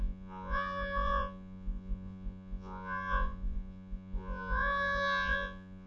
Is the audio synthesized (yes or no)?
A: yes